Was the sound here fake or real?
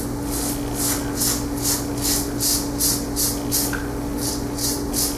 real